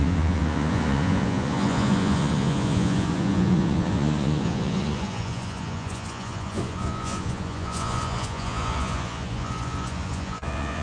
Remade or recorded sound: remade